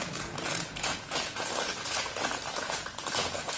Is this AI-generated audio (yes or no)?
yes